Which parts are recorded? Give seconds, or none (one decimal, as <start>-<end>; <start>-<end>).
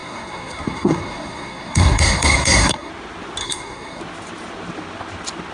2.9-3.4; 4.0-5.5